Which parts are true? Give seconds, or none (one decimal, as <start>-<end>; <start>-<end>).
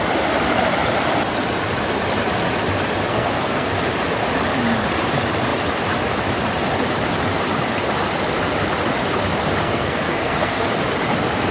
0.0-3.1; 3.7-9.6; 10.7-11.5